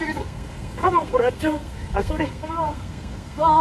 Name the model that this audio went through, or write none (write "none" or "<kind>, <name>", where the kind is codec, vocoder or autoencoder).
codec, SNAC